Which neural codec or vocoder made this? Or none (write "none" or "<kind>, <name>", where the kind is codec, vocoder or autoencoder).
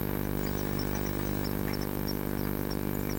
none